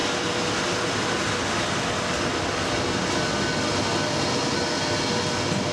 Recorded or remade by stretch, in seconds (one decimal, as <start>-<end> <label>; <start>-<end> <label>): 0.0-5.7 recorded